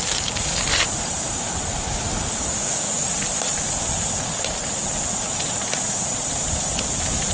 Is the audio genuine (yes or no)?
yes